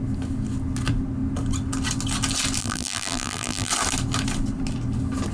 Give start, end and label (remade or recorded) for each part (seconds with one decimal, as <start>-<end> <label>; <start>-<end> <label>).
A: 0.0-2.6 recorded; 2.6-3.7 remade; 3.7-5.3 recorded